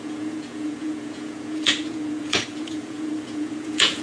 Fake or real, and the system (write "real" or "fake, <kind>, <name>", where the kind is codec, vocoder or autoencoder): fake, vocoder, Vocos